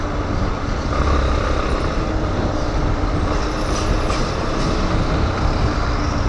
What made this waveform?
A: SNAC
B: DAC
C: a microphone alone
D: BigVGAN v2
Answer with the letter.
C